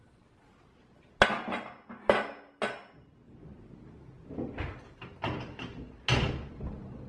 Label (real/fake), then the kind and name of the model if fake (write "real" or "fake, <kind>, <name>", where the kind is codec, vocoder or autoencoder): real